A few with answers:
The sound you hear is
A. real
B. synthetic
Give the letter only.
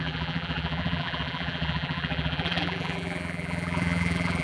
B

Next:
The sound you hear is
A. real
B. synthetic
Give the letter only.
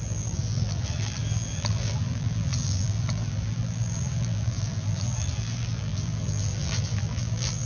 B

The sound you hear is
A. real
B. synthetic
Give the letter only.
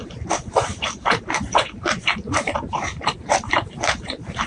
B